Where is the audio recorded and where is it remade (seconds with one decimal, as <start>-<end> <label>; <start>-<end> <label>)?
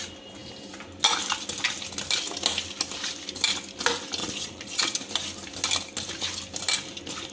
0.0-4.2 recorded; 4.2-4.8 remade; 4.8-7.3 recorded